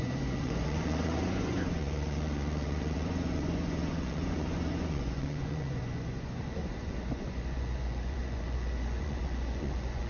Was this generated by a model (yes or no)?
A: yes